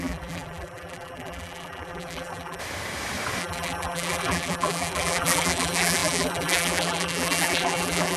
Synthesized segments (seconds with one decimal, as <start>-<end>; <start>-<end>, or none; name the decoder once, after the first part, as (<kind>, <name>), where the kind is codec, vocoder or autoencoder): 0.0-2.6 (vocoder, BigVGAN v2); 3.4-8.2